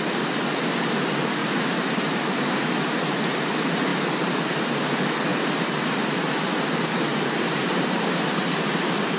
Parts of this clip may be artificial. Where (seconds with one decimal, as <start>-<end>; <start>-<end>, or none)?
1.4-3.1; 5.3-6.1; 7.1-9.2